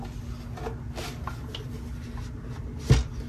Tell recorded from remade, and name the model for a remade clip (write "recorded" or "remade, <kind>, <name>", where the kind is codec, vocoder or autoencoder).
recorded